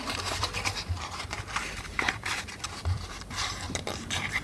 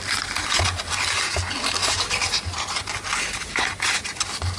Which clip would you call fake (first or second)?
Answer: first